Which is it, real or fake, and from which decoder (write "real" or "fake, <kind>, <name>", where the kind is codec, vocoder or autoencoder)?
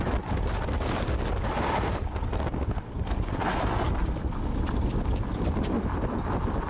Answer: real